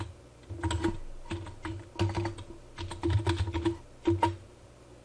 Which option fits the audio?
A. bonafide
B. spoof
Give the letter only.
A